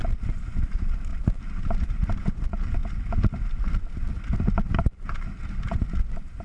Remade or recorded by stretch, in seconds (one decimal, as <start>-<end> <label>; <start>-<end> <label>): 0.0-2.8 remade; 2.8-5.5 recorded; 5.5-6.4 remade